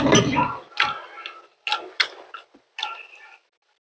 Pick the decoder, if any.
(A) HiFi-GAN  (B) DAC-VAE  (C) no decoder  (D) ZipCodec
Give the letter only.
C